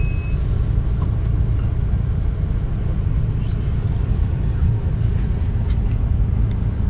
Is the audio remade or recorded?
recorded